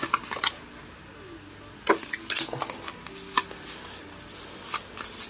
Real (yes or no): yes